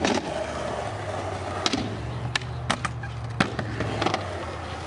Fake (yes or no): no